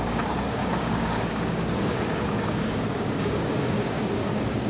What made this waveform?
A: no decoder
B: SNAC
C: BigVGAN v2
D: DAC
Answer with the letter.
D